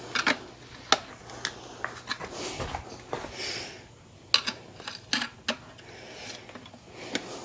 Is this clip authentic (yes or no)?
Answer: yes